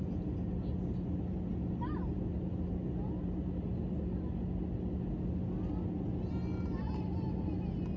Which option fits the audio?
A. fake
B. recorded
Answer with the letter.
B